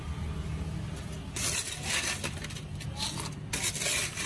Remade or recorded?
recorded